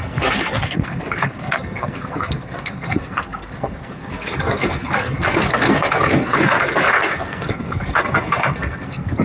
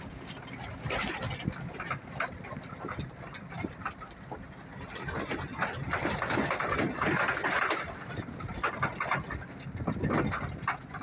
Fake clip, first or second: first